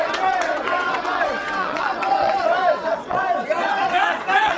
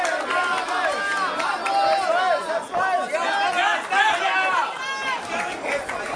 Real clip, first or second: second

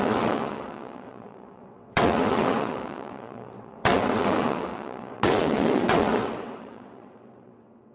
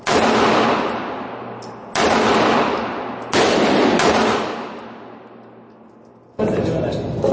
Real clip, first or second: second